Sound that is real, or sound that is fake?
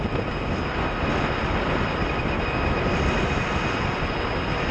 real